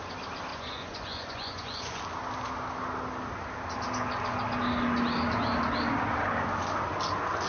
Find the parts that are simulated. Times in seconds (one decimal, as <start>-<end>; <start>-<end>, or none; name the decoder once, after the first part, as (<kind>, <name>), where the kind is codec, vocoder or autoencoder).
0.5-2.0 (vocoder, Vocos)